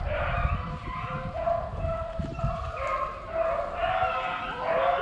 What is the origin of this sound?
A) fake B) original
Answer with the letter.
B